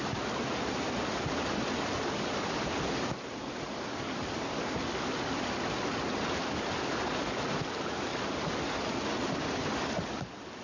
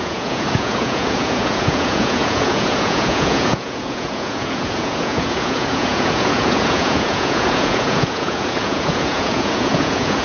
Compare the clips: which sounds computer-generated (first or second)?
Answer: second